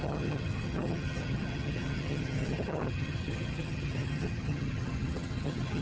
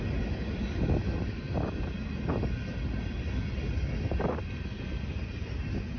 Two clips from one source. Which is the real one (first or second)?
second